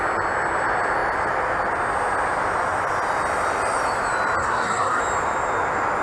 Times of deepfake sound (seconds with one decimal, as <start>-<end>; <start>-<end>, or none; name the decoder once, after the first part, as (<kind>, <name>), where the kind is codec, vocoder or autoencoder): 4.4-5.0 (codec, SNAC)